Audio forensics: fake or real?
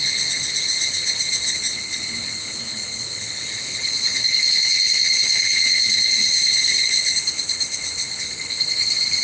fake